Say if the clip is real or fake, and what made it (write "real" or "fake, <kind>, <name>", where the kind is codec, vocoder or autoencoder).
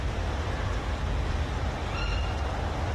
fake, vocoder, BigVGAN v2